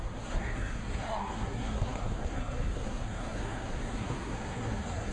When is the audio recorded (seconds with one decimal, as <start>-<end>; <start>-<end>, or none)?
none